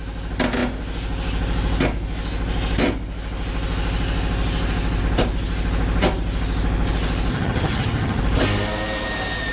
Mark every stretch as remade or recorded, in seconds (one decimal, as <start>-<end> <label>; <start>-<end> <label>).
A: 0.0-7.3 recorded; 7.3-8.2 remade; 8.2-9.5 recorded